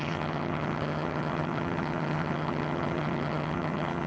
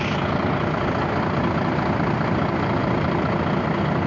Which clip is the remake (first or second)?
first